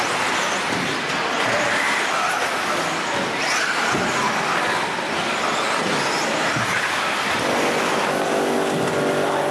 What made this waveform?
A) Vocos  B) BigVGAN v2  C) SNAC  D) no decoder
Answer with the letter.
D